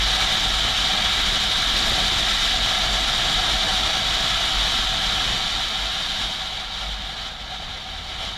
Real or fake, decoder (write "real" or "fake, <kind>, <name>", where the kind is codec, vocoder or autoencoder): real